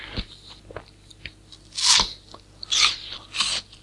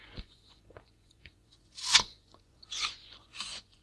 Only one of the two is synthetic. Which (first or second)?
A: second